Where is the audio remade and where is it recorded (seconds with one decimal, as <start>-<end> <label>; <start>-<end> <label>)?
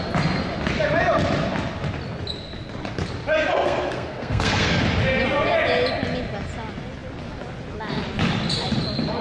0.0-3.5 recorded; 3.5-4.8 remade; 4.8-9.2 recorded